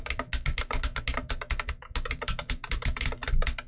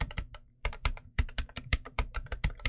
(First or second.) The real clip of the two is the first